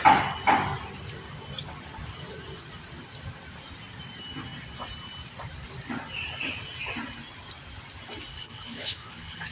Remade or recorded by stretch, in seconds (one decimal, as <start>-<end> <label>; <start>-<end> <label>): 0.0-8.3 recorded; 8.3-9.5 remade